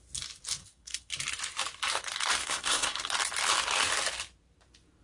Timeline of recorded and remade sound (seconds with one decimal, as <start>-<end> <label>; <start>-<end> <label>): 0.0-0.6 recorded; 0.6-1.1 remade; 1.1-2.4 recorded; 2.4-3.0 remade; 3.0-5.0 recorded